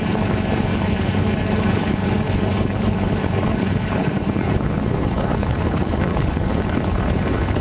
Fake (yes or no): yes